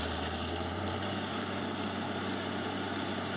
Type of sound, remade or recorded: remade